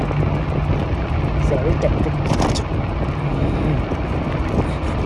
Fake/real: real